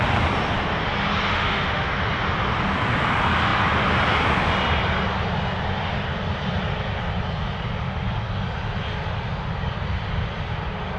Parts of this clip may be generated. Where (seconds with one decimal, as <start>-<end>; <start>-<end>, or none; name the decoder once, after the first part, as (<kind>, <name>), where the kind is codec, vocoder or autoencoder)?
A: 1.3-1.9 (autoencoder, DAC-VAE)